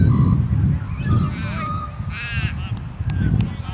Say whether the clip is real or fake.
real